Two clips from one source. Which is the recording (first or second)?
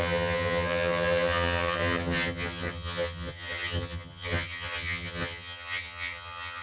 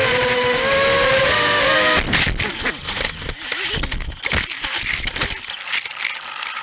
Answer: second